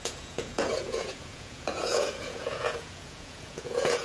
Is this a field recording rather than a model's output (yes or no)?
no